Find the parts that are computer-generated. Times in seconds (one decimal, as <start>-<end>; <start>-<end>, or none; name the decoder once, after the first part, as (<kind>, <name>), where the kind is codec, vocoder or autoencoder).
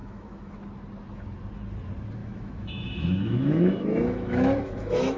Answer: 0.0-0.6 (autoencoder, DAC-VAE); 2.2-5.2